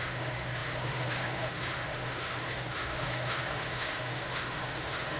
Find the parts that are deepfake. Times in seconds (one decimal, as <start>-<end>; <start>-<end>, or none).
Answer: 0.0-5.2